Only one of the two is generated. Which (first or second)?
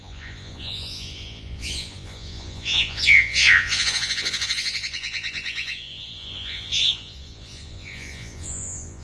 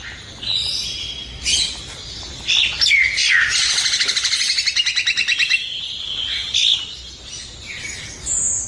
first